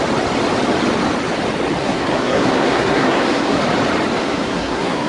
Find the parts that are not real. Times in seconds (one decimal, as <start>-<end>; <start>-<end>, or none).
1.8-3.6; 4.2-5.1

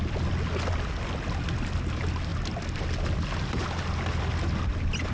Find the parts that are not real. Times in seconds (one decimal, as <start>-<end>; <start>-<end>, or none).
none

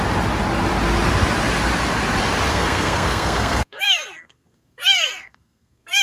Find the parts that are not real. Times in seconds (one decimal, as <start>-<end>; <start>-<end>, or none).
2.5-6.0

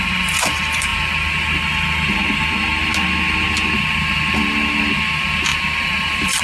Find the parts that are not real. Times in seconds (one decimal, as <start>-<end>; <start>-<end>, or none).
none

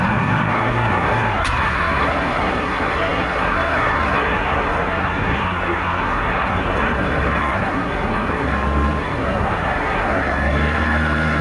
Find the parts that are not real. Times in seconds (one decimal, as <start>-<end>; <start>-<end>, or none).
0.0-11.4

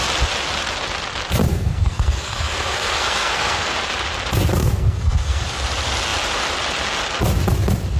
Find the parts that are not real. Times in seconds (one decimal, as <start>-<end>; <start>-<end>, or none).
1.5-3.7; 4.6-5.4

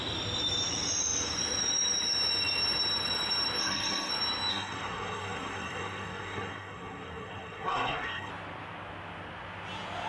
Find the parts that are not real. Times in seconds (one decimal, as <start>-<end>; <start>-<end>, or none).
3.6-4.1; 4.5-8.3

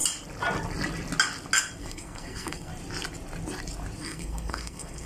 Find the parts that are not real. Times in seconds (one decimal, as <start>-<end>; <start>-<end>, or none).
1.8-2.7; 4.0-5.1